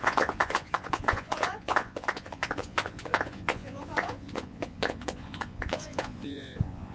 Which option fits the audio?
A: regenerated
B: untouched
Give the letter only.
A